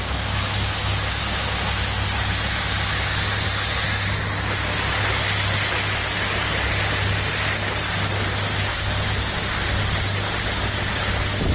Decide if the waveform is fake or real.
real